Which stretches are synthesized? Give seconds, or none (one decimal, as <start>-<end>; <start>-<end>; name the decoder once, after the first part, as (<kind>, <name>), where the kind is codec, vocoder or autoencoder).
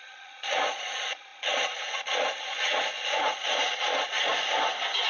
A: 0.0-4.3 (vocoder, Vocos)